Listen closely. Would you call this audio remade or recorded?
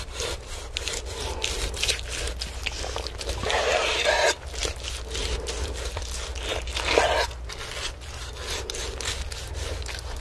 recorded